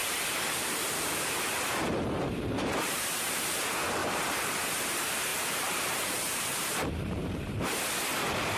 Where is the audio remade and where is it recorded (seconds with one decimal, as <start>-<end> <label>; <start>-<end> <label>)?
0.0-3.6 remade; 3.6-4.0 recorded; 4.0-4.7 remade; 4.7-5.3 recorded; 5.3-7.8 remade; 7.8-8.6 recorded